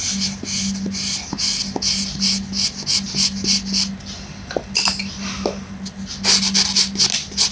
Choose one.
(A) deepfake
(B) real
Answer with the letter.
B